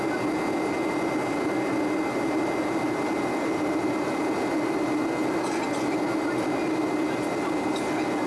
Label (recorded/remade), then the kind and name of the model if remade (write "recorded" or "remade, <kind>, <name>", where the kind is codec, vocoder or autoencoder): recorded